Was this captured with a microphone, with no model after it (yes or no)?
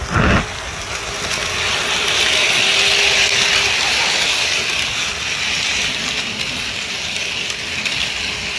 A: yes